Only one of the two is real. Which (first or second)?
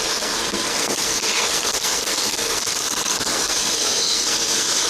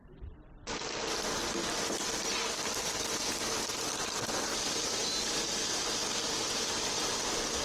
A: second